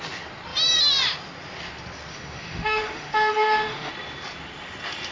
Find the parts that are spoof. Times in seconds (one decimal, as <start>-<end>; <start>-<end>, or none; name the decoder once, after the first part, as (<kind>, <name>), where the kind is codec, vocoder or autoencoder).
2.1-3.9 (autoencoder, DAC-VAE)